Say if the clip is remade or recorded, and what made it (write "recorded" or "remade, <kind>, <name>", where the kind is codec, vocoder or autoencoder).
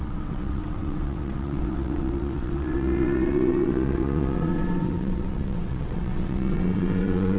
remade, vocoder, WaveNeXt